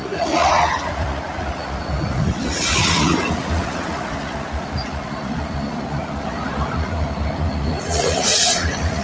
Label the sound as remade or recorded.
remade